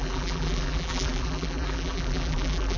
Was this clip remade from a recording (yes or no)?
yes